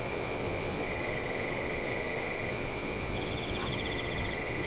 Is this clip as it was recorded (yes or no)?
no